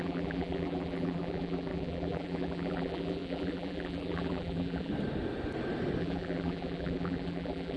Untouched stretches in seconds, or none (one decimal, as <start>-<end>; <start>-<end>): 4.9-6.0